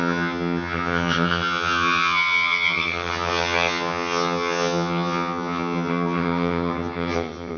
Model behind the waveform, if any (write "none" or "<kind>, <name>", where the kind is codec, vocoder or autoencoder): vocoder, HiFi-GAN